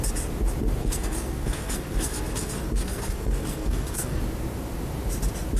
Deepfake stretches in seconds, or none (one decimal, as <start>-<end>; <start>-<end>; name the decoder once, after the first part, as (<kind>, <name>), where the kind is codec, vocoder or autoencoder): 0.8-4.2 (codec, SNAC)